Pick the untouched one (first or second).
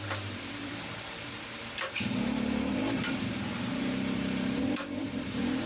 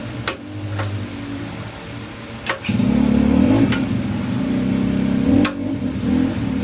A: second